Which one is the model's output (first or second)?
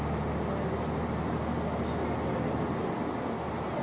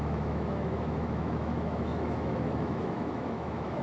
second